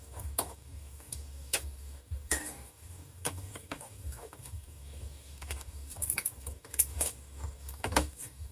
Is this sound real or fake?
fake